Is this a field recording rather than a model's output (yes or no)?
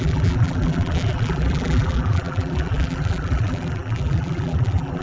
no